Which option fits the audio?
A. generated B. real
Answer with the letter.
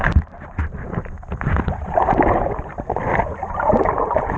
A